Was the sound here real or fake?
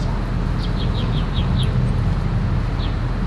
real